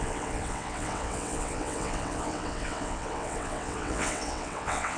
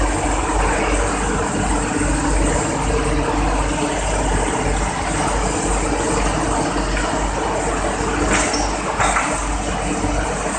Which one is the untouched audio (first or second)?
second